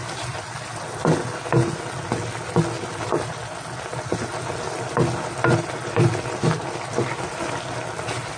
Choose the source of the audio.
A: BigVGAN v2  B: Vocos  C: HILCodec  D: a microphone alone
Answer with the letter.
D